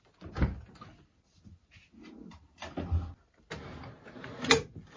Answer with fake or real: real